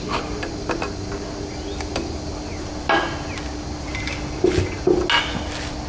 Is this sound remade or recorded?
recorded